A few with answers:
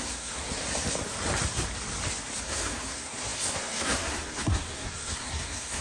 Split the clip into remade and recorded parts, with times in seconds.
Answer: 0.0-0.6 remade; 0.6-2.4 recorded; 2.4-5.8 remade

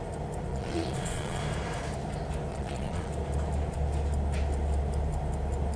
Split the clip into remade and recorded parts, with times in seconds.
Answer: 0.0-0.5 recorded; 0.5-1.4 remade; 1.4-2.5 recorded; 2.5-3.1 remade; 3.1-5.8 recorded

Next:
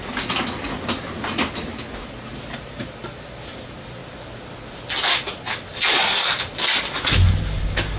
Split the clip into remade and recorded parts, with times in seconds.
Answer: 0.0-8.0 recorded